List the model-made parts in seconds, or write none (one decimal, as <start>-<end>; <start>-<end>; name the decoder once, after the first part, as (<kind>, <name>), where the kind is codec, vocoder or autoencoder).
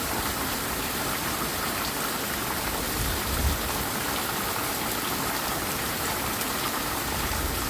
0.0-1.5 (vocoder, BigVGAN v2); 5.5-7.7